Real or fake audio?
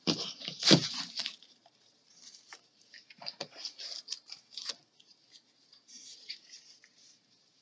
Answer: fake